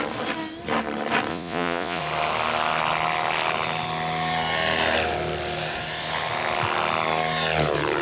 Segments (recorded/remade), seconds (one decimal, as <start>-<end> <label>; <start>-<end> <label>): 0.0-1.3 recorded; 1.3-2.0 remade; 2.0-8.0 recorded